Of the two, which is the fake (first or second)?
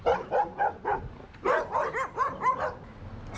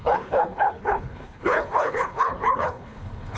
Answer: second